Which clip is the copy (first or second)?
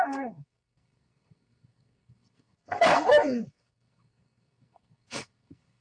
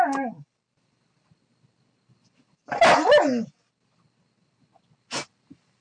first